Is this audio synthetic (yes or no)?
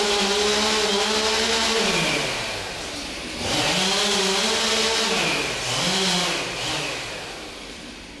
no